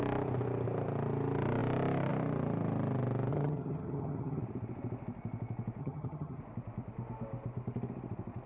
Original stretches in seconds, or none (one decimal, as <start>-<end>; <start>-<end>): 0.0-3.3; 4.4-5.8; 6.4-8.5